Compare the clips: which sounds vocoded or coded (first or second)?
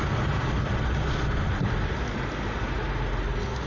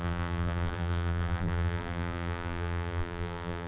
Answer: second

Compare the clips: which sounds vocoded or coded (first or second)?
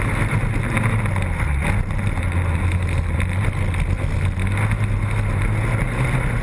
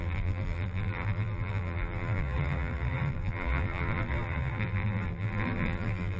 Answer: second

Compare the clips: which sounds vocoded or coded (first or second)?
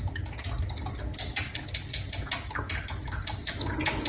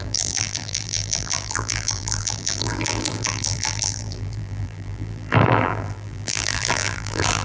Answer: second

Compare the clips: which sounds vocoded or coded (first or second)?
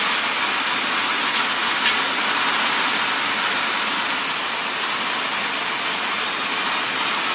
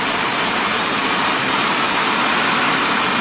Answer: second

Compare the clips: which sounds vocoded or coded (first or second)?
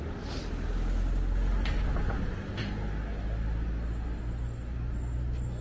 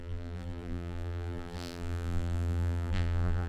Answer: second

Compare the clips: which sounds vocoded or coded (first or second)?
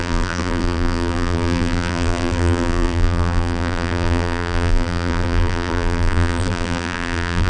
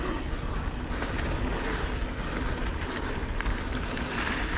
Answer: first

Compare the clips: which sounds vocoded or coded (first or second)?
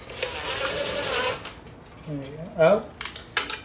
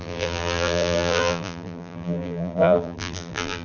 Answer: second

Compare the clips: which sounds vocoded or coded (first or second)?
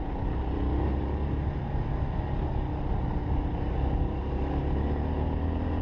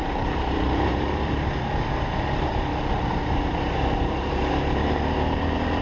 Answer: second